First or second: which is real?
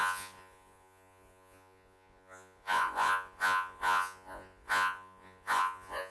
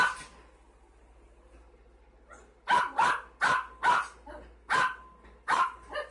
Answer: second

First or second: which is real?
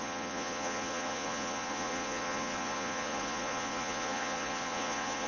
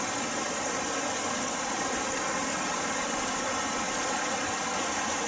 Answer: second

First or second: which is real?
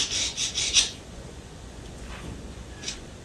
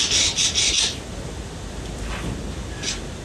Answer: second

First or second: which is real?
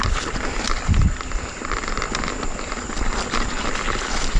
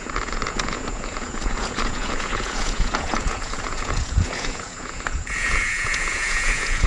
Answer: first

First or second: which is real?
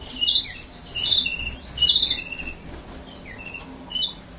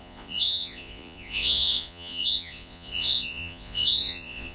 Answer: first